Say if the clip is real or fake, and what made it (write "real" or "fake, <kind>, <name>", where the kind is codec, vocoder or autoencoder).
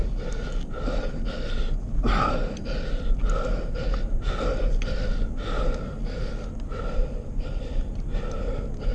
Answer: real